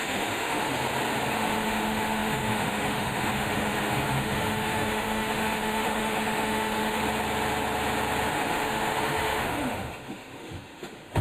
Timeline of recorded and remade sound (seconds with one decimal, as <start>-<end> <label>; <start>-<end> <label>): 0.0-0.7 remade; 0.7-1.3 recorded; 1.3-7.0 remade; 7.0-8.3 recorded; 8.3-11.2 remade